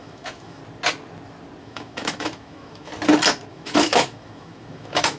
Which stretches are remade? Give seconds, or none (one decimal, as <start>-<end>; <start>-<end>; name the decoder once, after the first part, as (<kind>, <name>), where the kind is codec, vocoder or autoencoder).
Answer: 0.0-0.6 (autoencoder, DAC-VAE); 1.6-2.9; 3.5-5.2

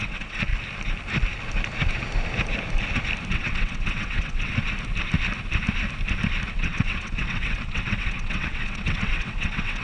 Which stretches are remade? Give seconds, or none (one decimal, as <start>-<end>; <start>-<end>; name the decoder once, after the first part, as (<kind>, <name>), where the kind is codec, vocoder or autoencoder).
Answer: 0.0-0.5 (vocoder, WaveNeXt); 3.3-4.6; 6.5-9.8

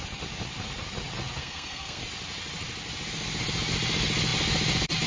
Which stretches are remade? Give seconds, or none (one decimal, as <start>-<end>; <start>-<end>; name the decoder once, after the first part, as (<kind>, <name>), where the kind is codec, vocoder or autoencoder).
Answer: 1.4-2.0 (codec, SNAC)